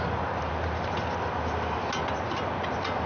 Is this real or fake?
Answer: real